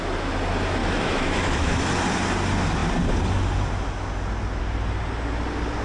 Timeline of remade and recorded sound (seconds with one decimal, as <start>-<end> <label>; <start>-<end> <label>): 0.0-0.8 recorded; 0.8-1.8 remade; 1.8-5.8 recorded